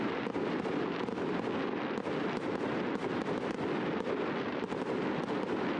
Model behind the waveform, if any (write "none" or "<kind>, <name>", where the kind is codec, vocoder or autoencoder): none